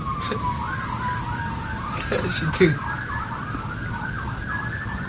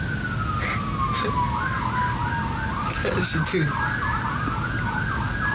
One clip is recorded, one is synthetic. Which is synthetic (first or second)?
first